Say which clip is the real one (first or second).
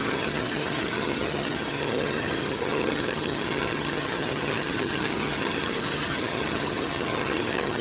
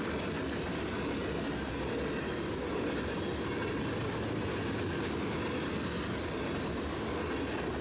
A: second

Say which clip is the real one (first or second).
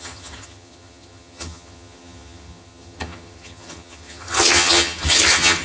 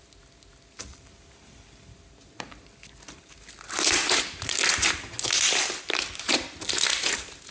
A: second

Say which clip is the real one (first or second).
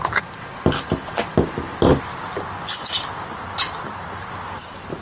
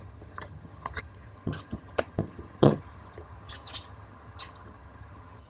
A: first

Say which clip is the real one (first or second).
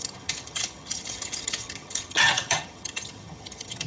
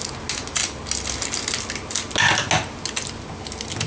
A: second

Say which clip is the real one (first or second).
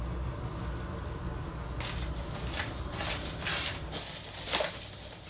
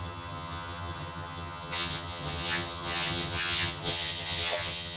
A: first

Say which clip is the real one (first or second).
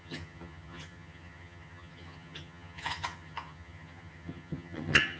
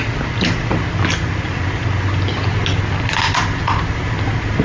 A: second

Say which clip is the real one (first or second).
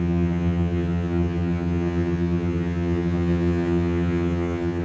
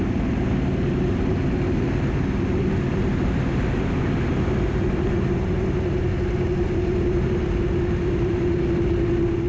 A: second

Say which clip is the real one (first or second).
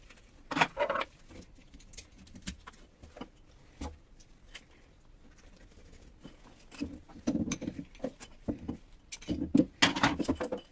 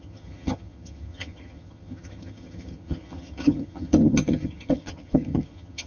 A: first